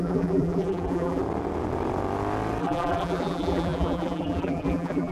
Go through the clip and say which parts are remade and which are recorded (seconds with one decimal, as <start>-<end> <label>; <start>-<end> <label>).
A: 0.0-1.2 remade; 1.2-2.6 recorded; 2.6-5.1 remade